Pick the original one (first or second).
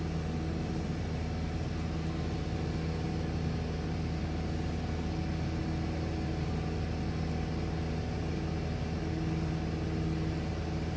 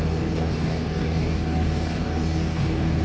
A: first